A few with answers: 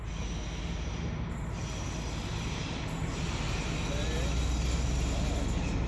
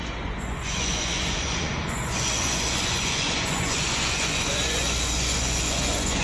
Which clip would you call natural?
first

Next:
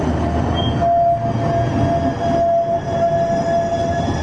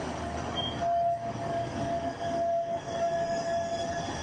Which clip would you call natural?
first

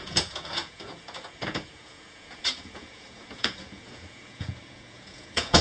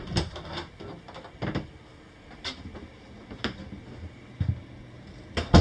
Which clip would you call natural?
second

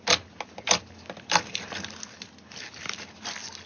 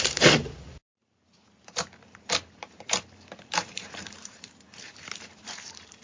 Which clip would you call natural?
first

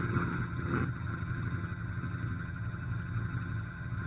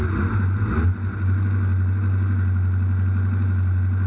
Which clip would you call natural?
second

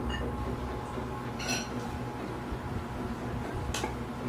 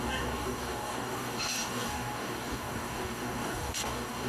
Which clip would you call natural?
first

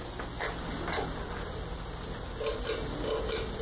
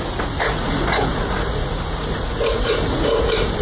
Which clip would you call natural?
first